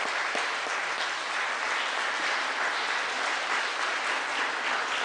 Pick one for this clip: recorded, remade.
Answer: recorded